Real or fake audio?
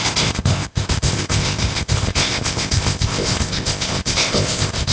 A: fake